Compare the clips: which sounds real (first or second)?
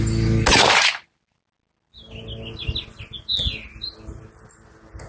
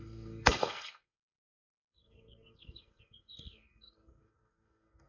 first